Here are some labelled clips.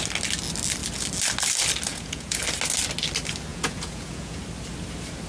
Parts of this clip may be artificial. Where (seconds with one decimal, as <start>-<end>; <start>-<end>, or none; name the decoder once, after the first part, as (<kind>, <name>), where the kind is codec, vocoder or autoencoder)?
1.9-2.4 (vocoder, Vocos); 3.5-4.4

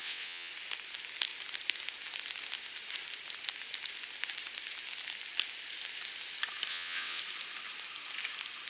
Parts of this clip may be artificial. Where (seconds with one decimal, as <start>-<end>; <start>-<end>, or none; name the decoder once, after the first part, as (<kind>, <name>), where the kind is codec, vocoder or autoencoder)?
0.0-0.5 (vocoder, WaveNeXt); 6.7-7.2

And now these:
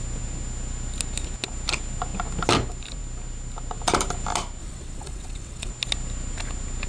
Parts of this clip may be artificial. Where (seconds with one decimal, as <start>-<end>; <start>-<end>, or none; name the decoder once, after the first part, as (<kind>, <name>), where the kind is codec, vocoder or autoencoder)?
4.6-5.7 (vocoder, WaveNeXt)

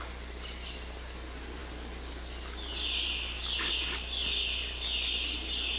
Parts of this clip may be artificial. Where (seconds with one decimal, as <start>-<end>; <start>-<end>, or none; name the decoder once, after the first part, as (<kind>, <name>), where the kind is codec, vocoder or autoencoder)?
none

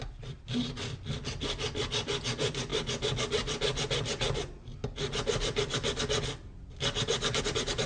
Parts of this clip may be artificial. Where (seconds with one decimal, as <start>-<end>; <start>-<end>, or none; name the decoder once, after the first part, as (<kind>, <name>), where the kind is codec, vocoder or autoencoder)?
none

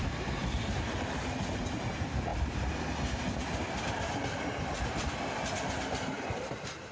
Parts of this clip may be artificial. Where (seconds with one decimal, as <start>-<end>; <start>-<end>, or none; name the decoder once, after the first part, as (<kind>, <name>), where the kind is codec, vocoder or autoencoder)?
none